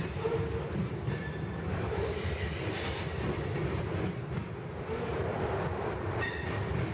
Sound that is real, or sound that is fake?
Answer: fake